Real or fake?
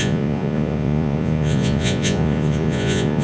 fake